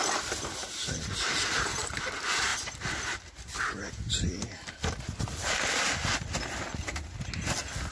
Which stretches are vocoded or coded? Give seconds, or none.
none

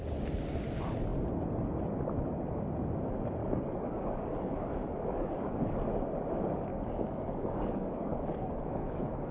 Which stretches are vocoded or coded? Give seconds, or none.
3.4-5.8 (codec, DAC); 6.7-9.3

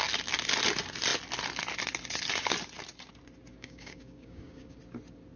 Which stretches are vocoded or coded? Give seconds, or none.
3.5-4.8 (codec, DAC)

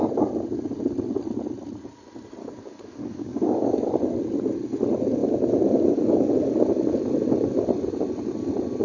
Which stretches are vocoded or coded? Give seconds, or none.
2.4-3.9 (codec, DAC)